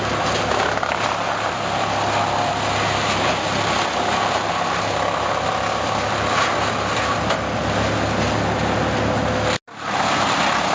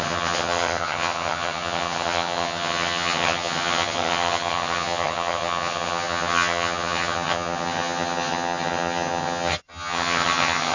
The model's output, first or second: second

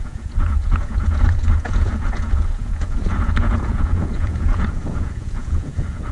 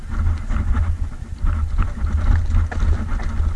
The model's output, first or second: first